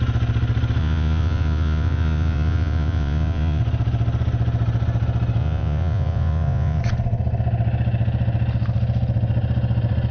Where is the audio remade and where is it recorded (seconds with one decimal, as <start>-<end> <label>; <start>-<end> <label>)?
0.0-0.8 recorded; 0.8-3.6 remade; 3.6-5.4 recorded; 5.4-6.8 remade; 6.8-10.1 recorded